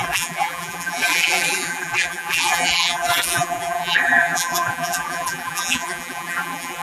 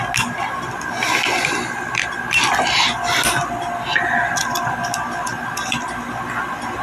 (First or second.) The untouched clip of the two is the second